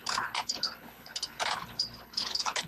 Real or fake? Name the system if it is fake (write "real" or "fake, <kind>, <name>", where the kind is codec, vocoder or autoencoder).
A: fake, codec, HILCodec